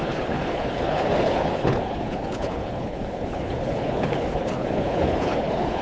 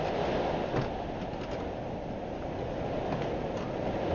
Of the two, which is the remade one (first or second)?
first